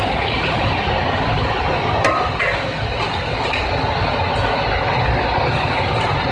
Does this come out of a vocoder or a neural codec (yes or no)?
no